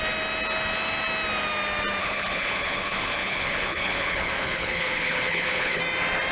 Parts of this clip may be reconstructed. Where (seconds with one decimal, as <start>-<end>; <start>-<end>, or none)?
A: 2.0-5.8